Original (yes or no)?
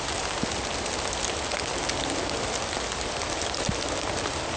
yes